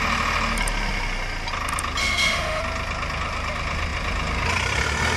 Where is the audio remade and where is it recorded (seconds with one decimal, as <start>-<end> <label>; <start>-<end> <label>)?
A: 0.0-2.0 recorded; 2.0-2.6 remade; 2.6-5.2 recorded